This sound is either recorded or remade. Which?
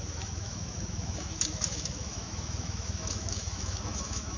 remade